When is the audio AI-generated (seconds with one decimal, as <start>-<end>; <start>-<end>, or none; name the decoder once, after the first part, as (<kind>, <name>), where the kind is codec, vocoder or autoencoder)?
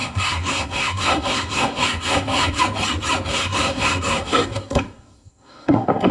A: 0.0-2.6 (codec, SNAC); 3.3-6.1